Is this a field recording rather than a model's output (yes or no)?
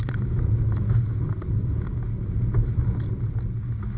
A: yes